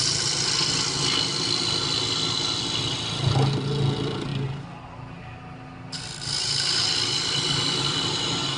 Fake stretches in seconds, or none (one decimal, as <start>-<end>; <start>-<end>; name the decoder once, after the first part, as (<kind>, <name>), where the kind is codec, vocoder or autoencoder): none